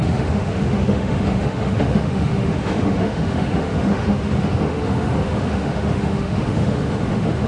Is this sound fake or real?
fake